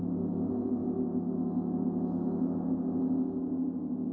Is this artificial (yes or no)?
no